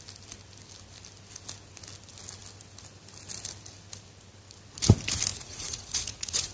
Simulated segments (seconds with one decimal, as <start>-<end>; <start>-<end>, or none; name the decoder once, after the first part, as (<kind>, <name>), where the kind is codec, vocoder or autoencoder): 5.3-6.5 (vocoder, Vocos)